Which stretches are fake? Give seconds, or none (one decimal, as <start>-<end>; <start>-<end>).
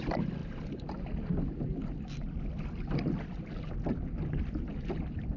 none